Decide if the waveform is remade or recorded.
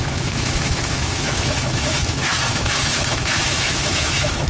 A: remade